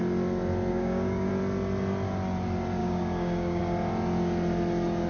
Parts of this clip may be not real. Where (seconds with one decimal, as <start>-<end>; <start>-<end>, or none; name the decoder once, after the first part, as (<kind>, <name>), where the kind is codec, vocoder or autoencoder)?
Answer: 0.7-1.3 (codec, DAC); 2.8-3.6